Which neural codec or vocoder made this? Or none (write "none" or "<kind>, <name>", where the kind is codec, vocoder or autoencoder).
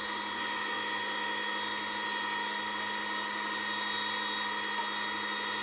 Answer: none